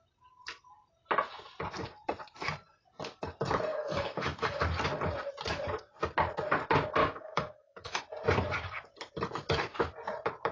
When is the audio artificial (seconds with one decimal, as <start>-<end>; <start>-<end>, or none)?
3.7-4.6; 7.0-8.0